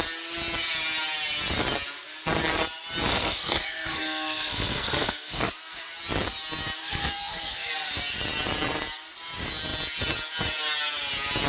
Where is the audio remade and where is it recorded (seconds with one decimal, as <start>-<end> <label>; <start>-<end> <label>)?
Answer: 0.0-3.1 recorded; 3.1-5.9 remade; 5.9-6.8 recorded; 6.8-7.7 remade; 7.7-11.5 recorded